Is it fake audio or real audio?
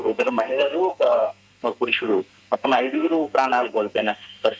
fake